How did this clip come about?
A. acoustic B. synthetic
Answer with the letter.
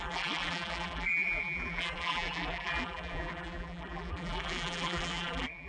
B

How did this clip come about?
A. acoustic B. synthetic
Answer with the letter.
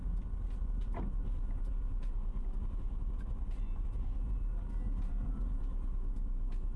A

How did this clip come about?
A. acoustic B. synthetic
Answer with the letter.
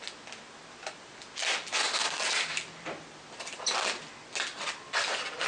A